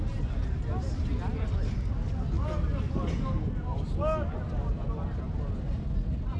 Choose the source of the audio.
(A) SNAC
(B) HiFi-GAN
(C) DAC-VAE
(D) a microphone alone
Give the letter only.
D